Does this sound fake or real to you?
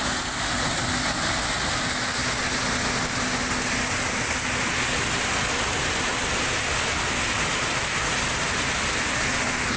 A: real